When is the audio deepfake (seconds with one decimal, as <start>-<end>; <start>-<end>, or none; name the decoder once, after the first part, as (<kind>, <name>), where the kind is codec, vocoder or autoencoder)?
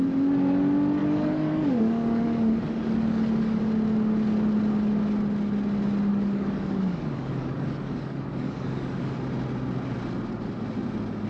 1.0-3.6 (codec, DAC); 6.1-9.2